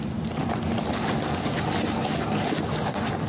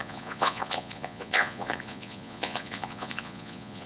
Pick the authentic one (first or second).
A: first